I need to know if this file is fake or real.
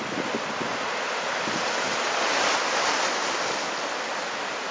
real